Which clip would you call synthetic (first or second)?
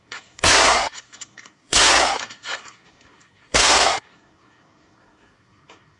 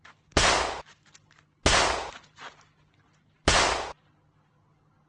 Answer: first